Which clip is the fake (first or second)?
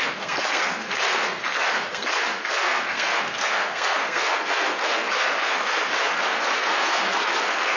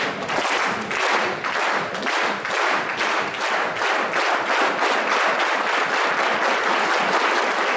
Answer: first